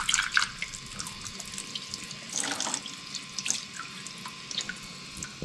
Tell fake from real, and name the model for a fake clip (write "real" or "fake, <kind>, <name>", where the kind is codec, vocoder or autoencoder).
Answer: real